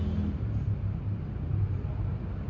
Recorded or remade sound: recorded